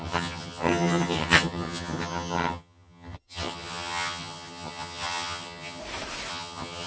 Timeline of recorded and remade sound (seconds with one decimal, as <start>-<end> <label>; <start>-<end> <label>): 0.0-5.8 remade; 5.8-6.3 recorded; 6.3-6.9 remade